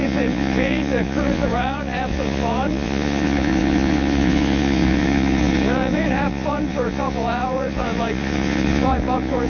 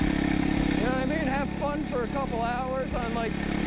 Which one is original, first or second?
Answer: second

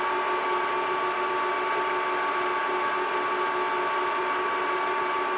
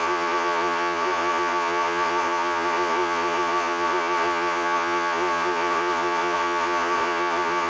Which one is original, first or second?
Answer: first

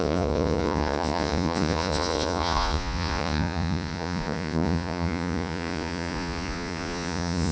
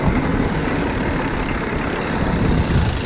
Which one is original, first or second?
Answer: second